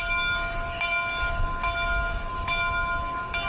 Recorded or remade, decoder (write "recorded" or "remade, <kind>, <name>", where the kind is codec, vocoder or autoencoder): recorded